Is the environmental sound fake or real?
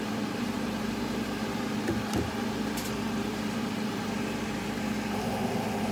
real